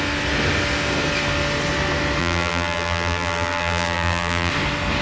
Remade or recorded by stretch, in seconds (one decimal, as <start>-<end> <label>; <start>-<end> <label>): 0.0-2.2 recorded; 2.2-4.5 remade; 4.5-5.0 recorded